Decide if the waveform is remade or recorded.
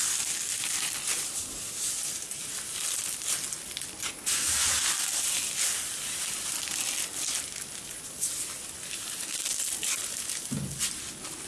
recorded